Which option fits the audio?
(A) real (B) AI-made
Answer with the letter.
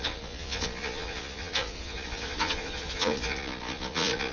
B